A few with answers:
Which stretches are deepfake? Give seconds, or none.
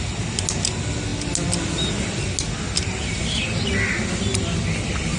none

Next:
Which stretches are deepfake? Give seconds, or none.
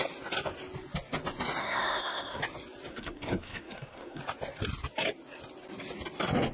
1.6-2.4 (codec, SNAC); 2.9-4.2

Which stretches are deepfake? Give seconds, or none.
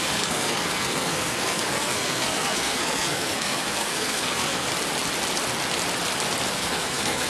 0.0-4.7 (codec, SNAC); 6.5-7.3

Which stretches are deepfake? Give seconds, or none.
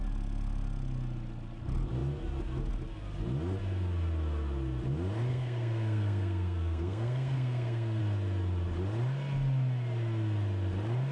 5.3-8.0 (codec, SNAC)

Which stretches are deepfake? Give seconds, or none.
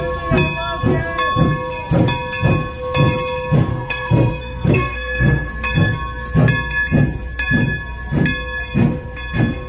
3.7-5.5 (codec, SNAC)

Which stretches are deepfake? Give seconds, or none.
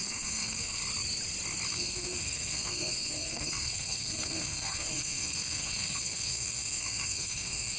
0.0-0.8 (codec, SNAC); 1.7-7.8